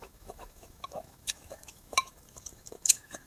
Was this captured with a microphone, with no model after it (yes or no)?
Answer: no